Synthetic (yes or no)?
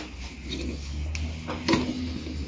no